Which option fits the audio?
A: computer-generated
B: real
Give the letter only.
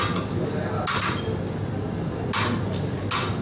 B